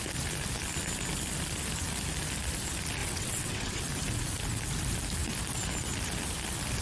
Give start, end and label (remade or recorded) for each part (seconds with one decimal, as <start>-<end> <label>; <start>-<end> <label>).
0.0-3.0 recorded; 3.0-3.8 remade; 3.8-6.8 recorded